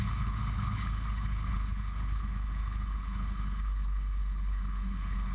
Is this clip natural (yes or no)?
no